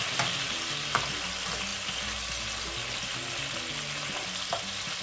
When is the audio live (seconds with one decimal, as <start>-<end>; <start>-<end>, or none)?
0.0-5.0